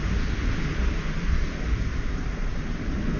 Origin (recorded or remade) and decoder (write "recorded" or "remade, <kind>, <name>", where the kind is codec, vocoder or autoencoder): recorded